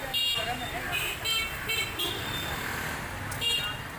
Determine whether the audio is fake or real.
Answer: real